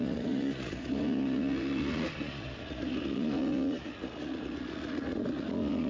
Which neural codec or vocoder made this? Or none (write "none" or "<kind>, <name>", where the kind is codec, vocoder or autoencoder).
vocoder, Vocos